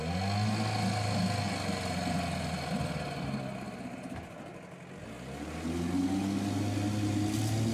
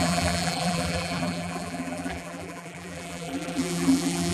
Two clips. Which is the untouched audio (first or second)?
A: first